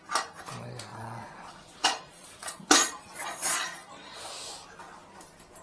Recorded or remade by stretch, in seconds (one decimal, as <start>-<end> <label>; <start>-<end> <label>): 0.0-0.9 recorded; 0.9-4.3 remade; 4.3-5.6 recorded